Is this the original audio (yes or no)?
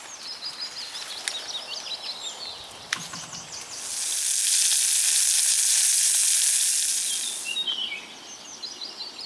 yes